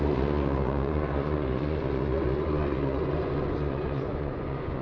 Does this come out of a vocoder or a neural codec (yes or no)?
yes